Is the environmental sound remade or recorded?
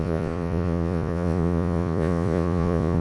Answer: remade